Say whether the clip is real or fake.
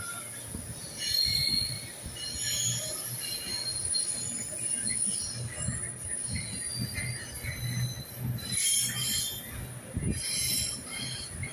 real